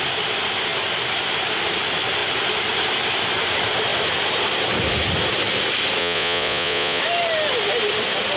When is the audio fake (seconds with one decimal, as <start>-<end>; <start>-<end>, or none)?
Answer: 6.0-7.0

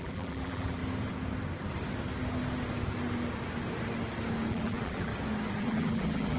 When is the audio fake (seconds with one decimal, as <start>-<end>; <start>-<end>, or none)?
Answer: 0.0-0.8; 4.5-5.1; 5.6-6.4

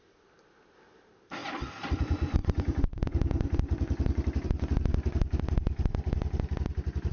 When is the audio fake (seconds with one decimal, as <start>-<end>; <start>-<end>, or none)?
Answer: 0.0-1.4; 2.0-7.1